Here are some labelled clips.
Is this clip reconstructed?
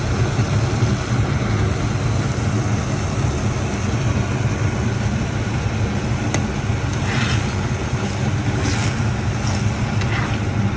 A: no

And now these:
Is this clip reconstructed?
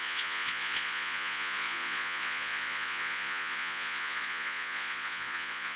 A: yes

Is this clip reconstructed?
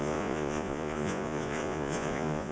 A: yes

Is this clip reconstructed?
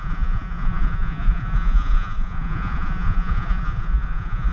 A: yes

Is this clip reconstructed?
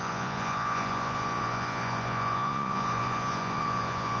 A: yes